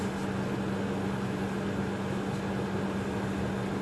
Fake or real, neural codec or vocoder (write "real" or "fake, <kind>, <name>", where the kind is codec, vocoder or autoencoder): real